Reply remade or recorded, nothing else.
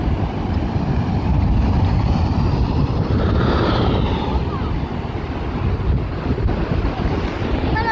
recorded